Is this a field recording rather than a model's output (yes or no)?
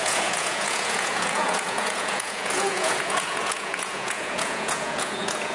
no